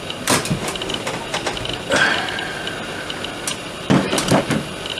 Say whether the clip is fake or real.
real